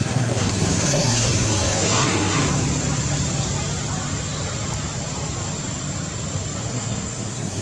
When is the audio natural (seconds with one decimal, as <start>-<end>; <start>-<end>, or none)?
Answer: 2.4-6.7